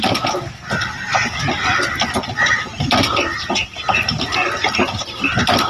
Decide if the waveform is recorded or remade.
remade